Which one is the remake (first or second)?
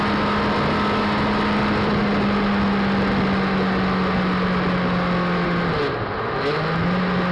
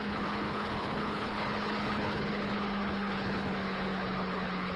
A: second